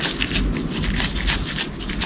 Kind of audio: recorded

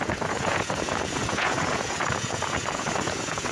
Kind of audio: remade